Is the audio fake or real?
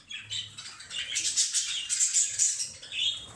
real